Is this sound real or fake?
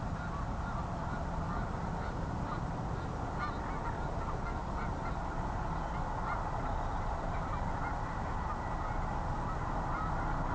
real